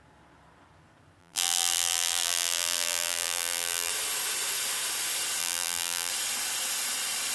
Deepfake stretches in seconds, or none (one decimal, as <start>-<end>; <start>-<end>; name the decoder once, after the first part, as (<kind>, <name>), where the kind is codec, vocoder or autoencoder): 1.2-3.9 (vocoder, BigVGAN v2); 5.4-6.1

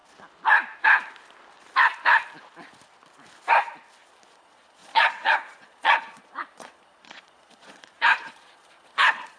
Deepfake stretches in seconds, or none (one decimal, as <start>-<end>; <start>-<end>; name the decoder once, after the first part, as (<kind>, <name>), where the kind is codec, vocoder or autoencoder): 4.3-9.4 (vocoder, Vocos)